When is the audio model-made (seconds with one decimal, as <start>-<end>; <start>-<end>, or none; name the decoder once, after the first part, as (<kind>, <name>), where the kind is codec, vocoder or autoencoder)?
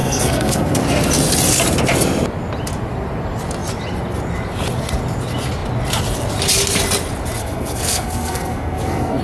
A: 0.0-0.8 (codec, SNAC); 7.4-9.2